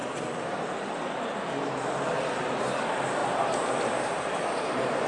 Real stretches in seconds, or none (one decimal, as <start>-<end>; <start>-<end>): 1.2-3.2; 4.2-5.1